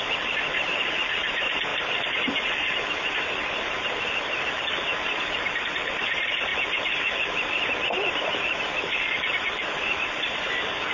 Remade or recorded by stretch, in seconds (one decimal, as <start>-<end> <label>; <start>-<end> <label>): 0.0-10.9 recorded